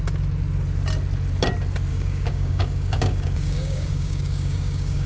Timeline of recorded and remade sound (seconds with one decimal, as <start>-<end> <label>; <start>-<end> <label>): 0.0-1.9 recorded; 1.9-5.1 remade